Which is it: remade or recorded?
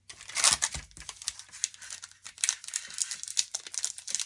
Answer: recorded